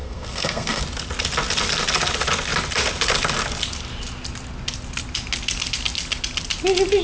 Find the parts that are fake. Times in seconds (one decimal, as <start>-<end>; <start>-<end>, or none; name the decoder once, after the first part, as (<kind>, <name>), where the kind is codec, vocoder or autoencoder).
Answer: 0.0-0.8 (codec, SNAC)